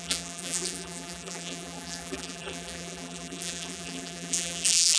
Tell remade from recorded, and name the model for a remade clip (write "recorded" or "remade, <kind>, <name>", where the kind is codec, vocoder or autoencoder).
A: remade, vocoder, BigVGAN v2